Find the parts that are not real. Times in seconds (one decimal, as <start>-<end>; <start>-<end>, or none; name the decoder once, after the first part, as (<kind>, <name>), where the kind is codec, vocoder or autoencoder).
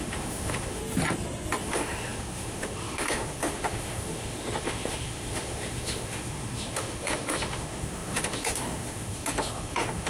0.0-0.8 (autoencoder, DAC-VAE); 1.6-10.1